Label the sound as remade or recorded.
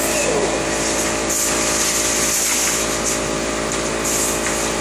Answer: recorded